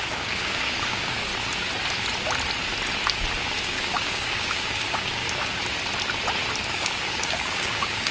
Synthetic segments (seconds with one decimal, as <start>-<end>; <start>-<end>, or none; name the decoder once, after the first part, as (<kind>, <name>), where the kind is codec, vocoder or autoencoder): 0.0-1.3 (codec, DAC); 3.6-5.2; 6.7-8.1